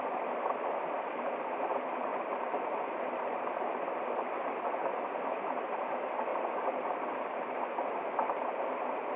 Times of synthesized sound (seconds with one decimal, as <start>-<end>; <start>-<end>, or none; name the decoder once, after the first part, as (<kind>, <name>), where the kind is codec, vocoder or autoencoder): 6.3-6.8 (vocoder, BigVGAN v2)